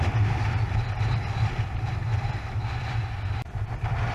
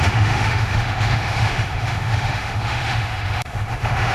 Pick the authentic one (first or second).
first